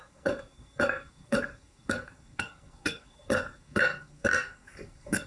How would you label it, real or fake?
fake